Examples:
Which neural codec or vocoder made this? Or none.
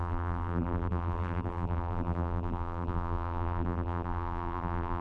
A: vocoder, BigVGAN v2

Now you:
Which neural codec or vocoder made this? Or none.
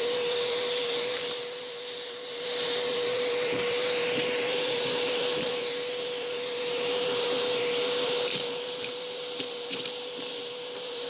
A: vocoder, BigVGAN v2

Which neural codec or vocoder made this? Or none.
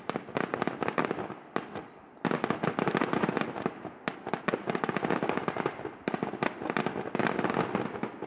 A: none